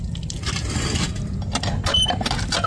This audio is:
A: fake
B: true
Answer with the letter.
B